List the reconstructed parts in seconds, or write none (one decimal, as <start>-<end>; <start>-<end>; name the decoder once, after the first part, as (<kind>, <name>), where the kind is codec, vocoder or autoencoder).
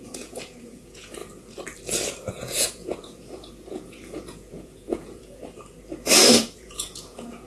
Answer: 0.0-1.2 (vocoder, Vocos); 2.3-5.4; 6.4-7.5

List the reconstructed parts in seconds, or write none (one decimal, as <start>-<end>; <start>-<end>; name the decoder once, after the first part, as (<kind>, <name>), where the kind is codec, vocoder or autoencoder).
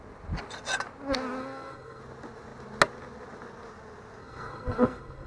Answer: 1.4-2.0 (codec, SNAC); 4.2-5.3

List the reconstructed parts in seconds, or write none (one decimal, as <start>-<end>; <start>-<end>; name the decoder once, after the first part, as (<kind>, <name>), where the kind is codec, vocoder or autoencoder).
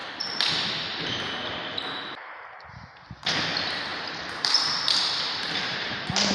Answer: 0.9-2.9 (vocoder, BigVGAN v2); 3.9-6.3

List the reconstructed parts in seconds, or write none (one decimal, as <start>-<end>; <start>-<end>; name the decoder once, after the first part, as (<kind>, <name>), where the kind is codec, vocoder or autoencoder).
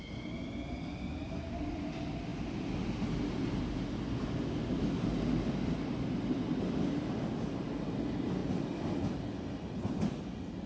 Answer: none